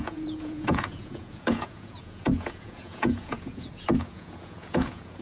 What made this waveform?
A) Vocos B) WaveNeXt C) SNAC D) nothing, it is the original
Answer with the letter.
A